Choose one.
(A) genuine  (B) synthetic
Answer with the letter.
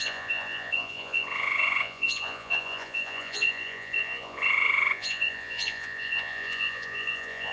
B